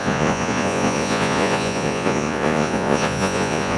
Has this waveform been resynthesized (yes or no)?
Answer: yes